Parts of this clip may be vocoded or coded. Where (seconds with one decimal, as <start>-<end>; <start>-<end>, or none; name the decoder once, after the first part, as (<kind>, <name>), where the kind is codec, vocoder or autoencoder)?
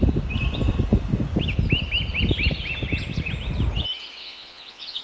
4.2-5.0 (vocoder, Vocos)